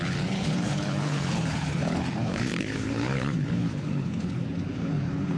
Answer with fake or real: fake